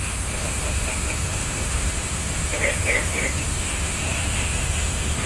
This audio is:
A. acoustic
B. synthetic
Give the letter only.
B